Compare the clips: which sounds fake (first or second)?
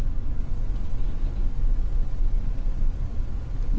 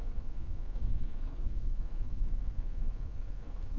second